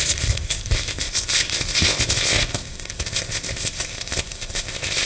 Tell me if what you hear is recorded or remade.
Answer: remade